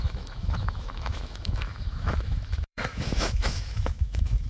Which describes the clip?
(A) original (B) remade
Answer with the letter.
B